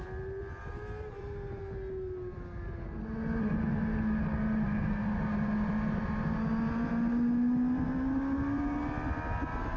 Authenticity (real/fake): real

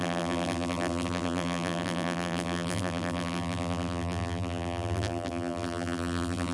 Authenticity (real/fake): fake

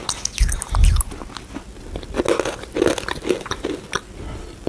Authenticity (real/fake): real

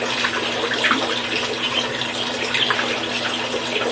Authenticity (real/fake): real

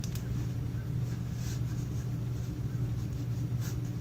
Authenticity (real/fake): real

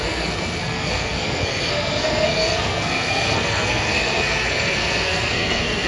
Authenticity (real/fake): fake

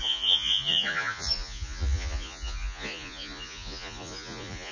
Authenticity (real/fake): fake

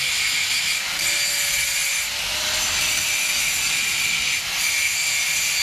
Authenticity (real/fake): real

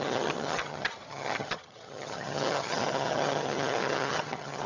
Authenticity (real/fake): fake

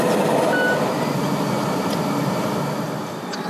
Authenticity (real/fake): real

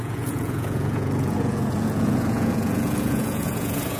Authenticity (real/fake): fake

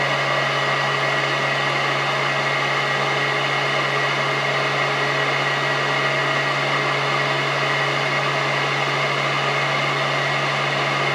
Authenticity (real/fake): real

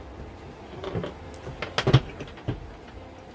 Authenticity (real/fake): real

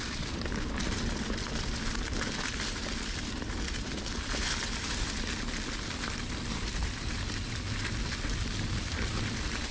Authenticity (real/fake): real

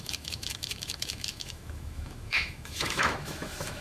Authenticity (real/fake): fake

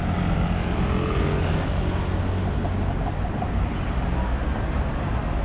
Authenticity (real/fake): real